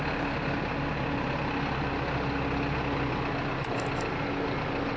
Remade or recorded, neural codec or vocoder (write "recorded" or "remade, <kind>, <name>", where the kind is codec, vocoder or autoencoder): recorded